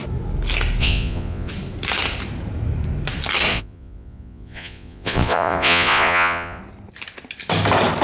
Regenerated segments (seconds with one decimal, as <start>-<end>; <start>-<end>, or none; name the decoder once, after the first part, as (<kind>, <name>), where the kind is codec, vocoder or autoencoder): 0.8-1.5 (vocoder, Vocos); 3.5-6.6